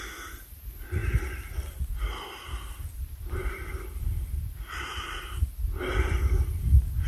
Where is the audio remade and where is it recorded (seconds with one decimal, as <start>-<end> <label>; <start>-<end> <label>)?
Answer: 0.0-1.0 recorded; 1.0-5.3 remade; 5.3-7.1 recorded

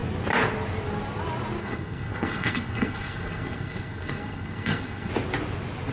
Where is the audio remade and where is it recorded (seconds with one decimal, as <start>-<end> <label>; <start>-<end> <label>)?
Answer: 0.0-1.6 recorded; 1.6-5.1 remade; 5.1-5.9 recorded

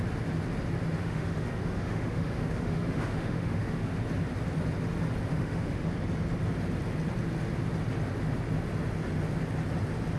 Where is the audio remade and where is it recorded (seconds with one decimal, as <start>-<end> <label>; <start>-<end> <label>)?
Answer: 0.0-1.0 recorded; 1.0-4.0 remade; 4.0-5.3 recorded; 5.3-5.9 remade; 5.9-10.2 recorded